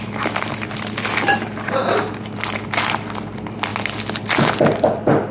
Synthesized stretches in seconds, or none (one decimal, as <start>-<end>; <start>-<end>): none